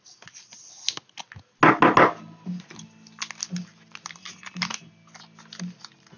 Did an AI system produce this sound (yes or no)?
no